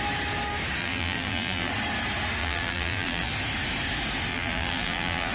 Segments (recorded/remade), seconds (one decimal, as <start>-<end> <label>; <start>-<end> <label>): 0.0-0.8 recorded; 0.8-1.7 remade; 1.7-2.4 recorded; 2.4-3.3 remade; 3.3-4.3 recorded; 4.3-5.3 remade